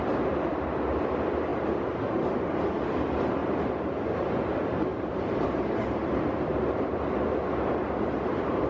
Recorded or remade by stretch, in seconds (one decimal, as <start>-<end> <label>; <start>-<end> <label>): 0.0-8.7 recorded